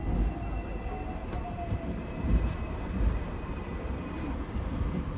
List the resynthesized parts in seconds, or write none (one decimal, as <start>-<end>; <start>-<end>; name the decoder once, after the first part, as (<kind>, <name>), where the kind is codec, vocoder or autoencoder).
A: 1.2-4.3 (vocoder, BigVGAN v2)